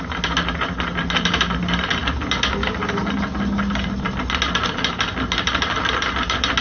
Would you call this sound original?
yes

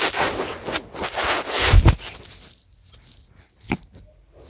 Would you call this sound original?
yes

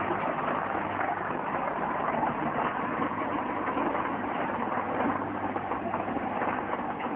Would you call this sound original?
yes